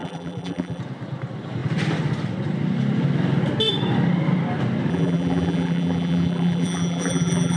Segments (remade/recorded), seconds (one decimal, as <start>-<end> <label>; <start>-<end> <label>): 0.0-0.8 remade; 0.8-4.9 recorded; 4.9-7.6 remade